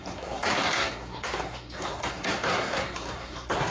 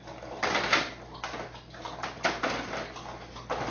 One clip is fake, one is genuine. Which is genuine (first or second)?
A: second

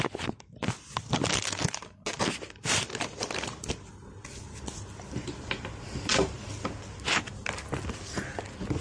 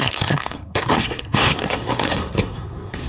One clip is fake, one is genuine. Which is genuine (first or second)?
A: first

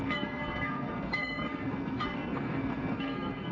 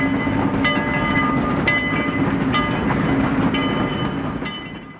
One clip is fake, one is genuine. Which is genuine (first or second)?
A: second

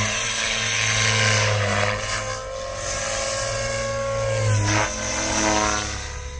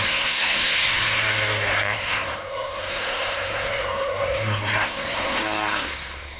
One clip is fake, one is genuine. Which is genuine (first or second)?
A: first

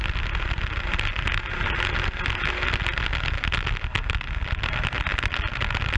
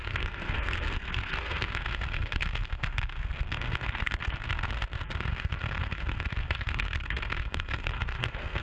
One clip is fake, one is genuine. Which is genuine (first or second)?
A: first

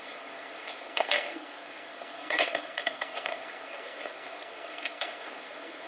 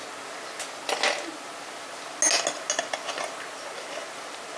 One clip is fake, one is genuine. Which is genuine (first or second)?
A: second